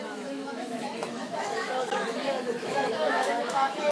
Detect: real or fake fake